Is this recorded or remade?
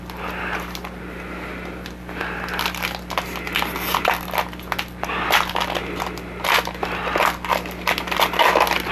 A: recorded